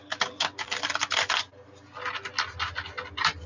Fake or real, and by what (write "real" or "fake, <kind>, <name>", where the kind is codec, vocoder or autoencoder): real